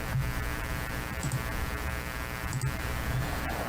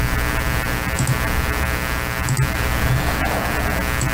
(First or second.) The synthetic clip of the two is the first